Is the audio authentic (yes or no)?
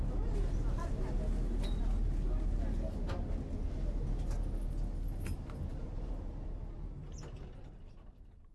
yes